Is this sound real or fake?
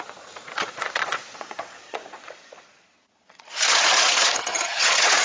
fake